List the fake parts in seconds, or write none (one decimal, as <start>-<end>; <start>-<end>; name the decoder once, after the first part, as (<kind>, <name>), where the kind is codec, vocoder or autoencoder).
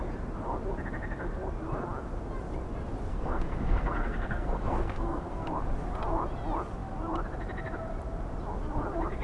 3.1-5.5 (codec, SNAC)